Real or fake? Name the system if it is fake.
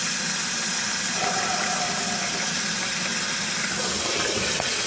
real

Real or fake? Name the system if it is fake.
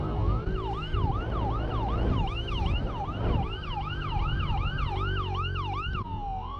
real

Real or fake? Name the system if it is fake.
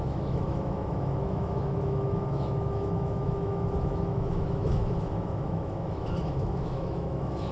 fake, autoencoder, DAC-VAE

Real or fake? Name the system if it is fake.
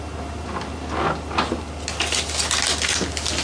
real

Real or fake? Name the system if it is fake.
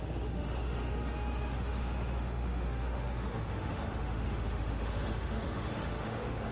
fake, autoencoder, DAC-VAE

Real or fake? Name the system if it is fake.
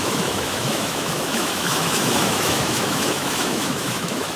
fake, autoencoder, DAC-VAE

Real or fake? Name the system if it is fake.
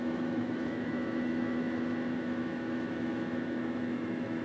fake, autoencoder, DAC-VAE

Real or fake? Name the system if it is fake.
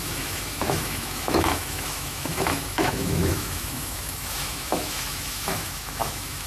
fake, autoencoder, DAC-VAE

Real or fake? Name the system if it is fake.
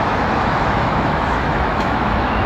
fake, autoencoder, DAC-VAE